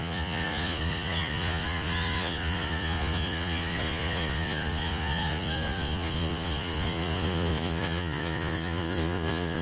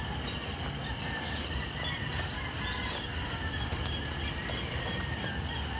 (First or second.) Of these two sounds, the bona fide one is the second